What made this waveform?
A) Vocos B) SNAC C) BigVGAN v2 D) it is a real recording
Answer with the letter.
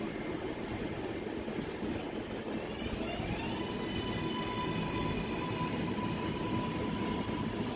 D